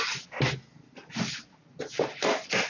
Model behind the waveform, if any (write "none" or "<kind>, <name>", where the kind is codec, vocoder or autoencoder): none